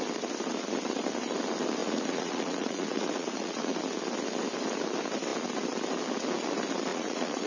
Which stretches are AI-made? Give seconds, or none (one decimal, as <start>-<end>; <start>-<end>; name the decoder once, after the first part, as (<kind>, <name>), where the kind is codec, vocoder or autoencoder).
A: 1.8-3.8 (vocoder, Vocos); 6.9-7.5